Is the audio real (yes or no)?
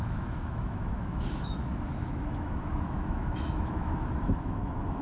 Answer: no